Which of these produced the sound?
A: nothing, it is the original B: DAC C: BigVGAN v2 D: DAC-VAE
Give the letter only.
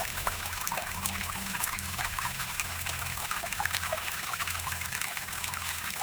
D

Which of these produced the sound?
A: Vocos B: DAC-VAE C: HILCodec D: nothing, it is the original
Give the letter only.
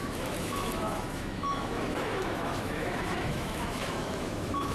B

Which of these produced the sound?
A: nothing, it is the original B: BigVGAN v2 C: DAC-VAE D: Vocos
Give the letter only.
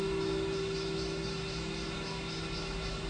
C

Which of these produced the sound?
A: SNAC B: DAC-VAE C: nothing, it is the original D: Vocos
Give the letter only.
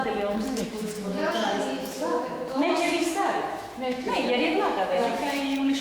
B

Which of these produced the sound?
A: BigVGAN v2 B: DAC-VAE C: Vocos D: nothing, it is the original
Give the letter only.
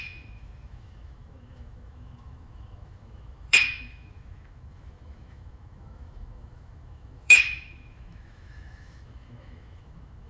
B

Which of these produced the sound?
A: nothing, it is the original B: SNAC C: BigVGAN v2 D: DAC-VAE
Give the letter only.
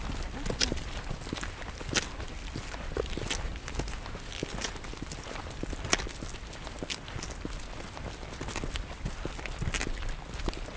A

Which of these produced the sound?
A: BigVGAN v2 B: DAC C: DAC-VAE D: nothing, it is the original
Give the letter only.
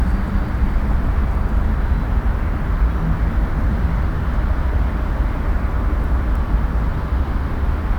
D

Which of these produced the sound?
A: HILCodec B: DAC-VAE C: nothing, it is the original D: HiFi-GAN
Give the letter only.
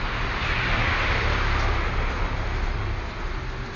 C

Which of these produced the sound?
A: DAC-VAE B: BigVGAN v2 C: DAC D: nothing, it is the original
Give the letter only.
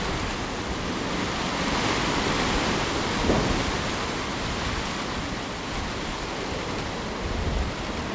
D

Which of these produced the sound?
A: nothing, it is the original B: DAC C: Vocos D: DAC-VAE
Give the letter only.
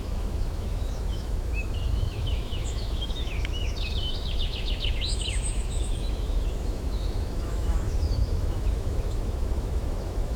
D